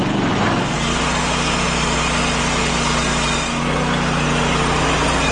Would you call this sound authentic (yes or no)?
yes